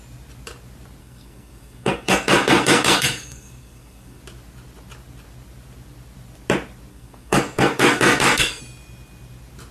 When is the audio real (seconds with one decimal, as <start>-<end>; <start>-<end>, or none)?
0.0-1.0; 4.2-6.9; 8.6-9.7